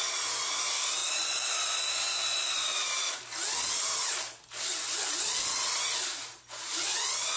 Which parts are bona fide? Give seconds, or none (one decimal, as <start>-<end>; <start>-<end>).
0.0-1.0; 1.7-7.4